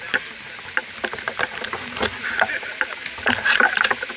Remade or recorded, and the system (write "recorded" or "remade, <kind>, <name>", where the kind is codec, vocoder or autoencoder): recorded